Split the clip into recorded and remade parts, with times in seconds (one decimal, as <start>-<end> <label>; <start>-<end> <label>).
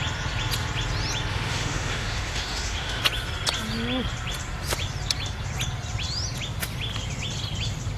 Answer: 0.0-1.3 recorded; 1.3-3.0 remade; 3.0-8.0 recorded